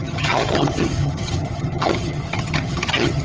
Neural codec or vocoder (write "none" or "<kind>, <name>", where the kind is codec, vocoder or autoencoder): vocoder, HiFi-GAN